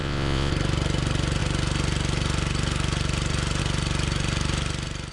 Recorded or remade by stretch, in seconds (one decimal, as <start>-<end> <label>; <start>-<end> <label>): 0.0-0.5 remade; 0.5-5.1 recorded